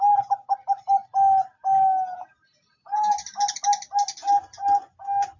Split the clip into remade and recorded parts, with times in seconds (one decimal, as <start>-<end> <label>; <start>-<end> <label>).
0.0-5.4 recorded

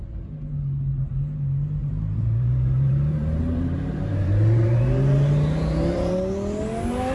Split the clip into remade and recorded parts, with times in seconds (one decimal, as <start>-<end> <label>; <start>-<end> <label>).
0.0-1.8 recorded; 1.8-6.1 remade; 6.1-7.1 recorded